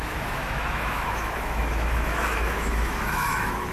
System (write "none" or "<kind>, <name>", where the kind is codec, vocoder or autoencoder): autoencoder, DAC-VAE